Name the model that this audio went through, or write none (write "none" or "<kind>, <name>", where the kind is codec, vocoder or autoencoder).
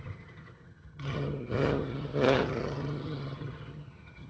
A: vocoder, HiFi-GAN